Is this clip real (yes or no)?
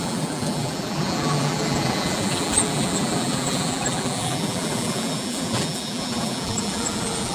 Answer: no